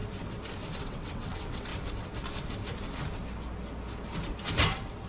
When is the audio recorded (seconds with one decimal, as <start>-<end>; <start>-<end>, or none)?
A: 0.0-0.7; 1.7-5.1